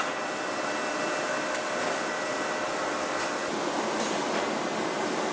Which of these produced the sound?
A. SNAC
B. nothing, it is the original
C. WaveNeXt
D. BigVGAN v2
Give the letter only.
B